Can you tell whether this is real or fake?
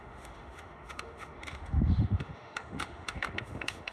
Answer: fake